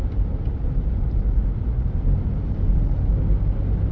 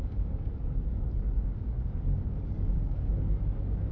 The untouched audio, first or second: first